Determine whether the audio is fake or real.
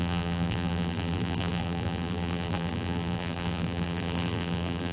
fake